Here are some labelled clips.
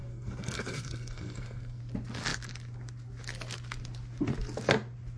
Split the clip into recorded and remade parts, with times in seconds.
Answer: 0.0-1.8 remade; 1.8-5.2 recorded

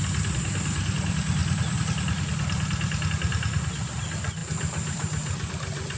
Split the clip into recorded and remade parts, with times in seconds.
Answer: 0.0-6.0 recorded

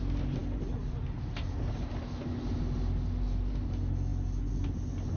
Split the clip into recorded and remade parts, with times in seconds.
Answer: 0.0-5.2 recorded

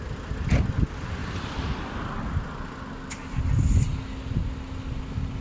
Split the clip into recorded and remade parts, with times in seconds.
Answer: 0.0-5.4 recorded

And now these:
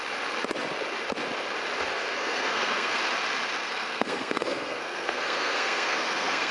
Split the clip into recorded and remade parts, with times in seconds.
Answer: 0.0-1.9 recorded; 1.9-3.0 remade; 3.0-3.6 recorded; 3.6-6.5 remade

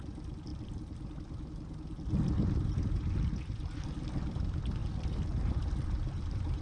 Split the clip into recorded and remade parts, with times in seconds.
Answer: 0.0-6.6 recorded

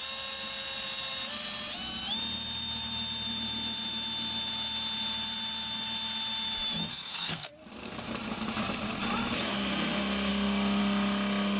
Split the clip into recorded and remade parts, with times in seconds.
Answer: 0.0-6.9 recorded; 6.9-7.5 remade; 7.5-11.6 recorded